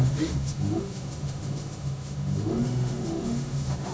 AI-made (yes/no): yes